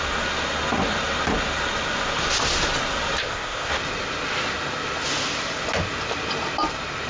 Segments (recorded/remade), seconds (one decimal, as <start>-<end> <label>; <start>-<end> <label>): 0.0-3.2 recorded; 3.2-3.7 remade; 3.7-7.1 recorded